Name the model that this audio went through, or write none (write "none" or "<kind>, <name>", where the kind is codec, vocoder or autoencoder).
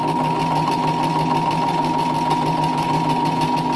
none